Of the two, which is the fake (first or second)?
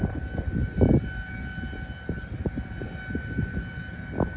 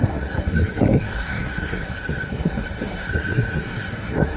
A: second